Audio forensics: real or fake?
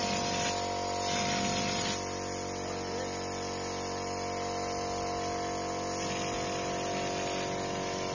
real